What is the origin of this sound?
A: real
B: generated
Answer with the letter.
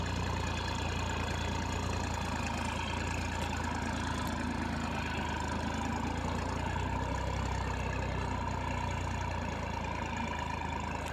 A